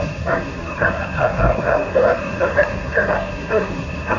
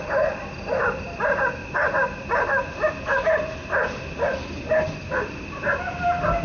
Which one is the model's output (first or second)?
first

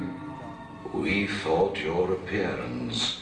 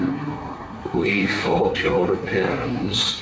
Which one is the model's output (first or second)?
second